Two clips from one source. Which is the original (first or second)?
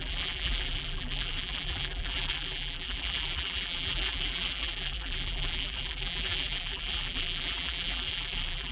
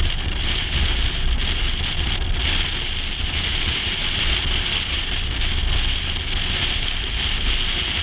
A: second